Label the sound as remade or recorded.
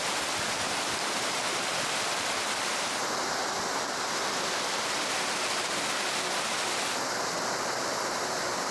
recorded